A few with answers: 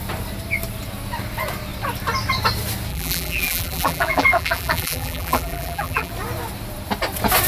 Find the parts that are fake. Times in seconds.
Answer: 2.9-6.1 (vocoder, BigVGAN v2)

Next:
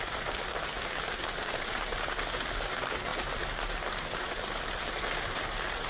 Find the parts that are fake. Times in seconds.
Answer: none